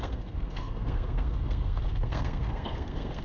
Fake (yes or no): yes